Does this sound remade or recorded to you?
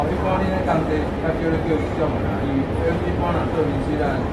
recorded